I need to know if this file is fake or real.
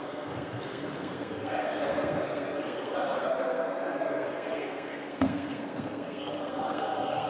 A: fake